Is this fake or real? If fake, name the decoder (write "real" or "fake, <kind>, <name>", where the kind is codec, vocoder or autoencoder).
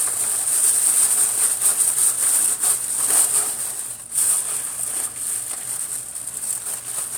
real